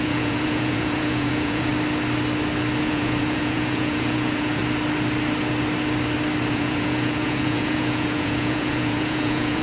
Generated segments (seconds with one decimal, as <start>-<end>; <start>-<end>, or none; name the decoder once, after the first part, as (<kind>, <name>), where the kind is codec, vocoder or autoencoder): 0.0-1.7 (vocoder, Vocos); 2.8-4.6; 6.5-9.6